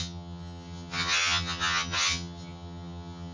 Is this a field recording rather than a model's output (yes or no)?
no